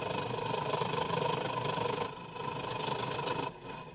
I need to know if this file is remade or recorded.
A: recorded